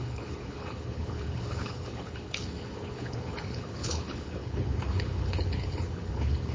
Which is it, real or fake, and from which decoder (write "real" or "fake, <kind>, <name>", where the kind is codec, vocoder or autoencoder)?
fake, codec, HILCodec